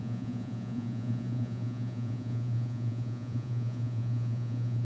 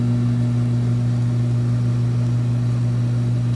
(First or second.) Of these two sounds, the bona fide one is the second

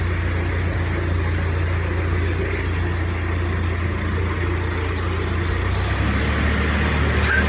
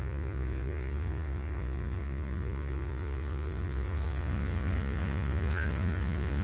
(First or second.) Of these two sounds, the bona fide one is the first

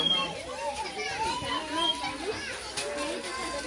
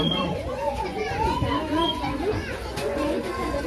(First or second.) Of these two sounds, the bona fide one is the first